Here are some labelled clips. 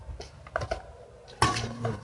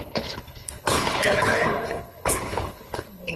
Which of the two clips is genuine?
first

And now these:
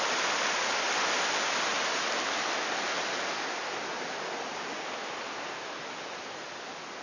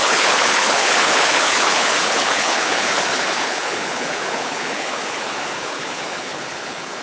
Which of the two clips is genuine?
first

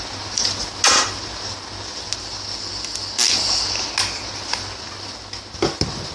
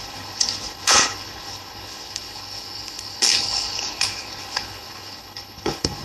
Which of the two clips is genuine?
first